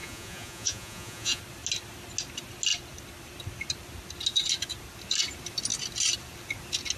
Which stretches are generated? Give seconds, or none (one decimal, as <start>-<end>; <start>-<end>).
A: 0.0-1.4